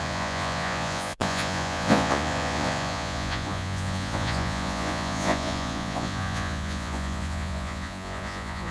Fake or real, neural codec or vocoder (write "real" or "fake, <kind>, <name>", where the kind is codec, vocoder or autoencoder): fake, vocoder, Vocos